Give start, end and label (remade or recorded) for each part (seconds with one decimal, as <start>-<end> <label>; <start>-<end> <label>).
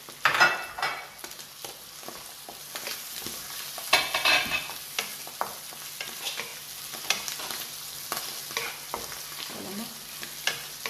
0.0-10.9 recorded